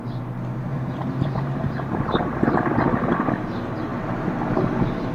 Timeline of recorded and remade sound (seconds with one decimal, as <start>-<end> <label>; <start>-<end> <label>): 0.0-0.7 recorded; 0.7-3.1 remade; 3.1-5.1 recorded